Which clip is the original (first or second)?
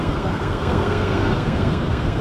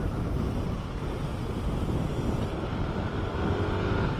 second